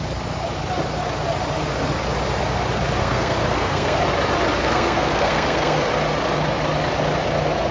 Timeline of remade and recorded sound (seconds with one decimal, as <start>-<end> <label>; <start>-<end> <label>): 0.0-3.0 recorded; 3.0-4.0 remade; 4.0-4.6 recorded; 4.6-5.8 remade; 5.8-7.7 recorded